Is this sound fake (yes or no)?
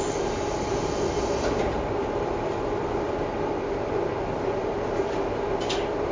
no